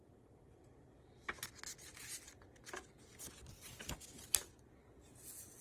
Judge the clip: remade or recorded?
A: recorded